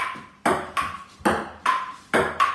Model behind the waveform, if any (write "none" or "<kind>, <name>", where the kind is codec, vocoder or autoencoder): none